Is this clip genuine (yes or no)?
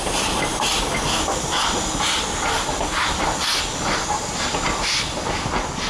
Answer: yes